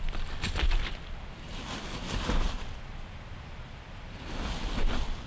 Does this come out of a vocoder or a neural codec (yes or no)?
no